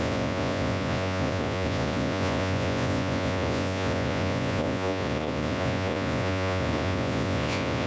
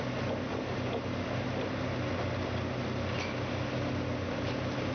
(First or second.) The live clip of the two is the second